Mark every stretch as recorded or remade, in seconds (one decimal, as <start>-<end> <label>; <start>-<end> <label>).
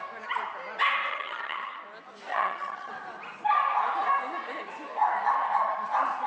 0.0-1.1 recorded; 1.1-1.8 remade; 1.8-2.3 recorded; 2.3-2.9 remade; 2.9-6.3 recorded